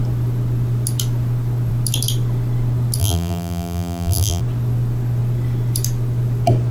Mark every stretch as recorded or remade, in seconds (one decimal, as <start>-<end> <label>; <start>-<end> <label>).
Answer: 0.0-3.0 recorded; 3.0-4.4 remade; 4.4-6.7 recorded